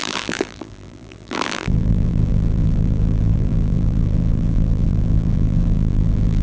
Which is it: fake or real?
fake